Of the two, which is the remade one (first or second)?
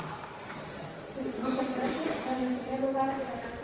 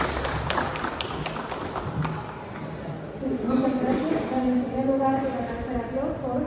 first